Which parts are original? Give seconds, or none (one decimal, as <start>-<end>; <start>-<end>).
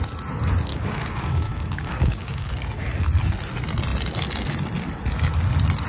0.0-0.7; 2.6-5.9